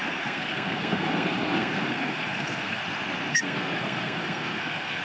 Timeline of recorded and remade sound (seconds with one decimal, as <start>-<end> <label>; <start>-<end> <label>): 0.0-2.8 remade; 2.8-3.3 recorded; 3.3-5.0 remade